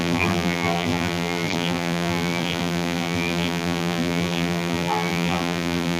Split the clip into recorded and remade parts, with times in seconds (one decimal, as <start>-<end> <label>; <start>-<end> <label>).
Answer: 0.0-6.0 remade